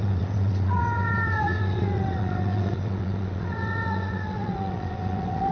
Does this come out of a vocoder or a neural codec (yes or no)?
yes